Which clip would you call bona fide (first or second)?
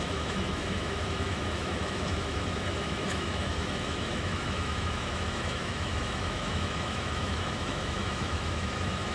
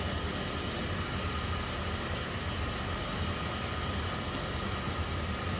second